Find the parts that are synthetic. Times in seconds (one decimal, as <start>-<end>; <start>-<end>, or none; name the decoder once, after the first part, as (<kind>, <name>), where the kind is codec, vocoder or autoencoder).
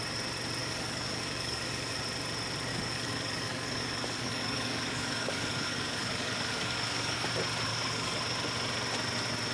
0.6-2.0 (codec, DAC); 2.7-7.3; 7.7-8.2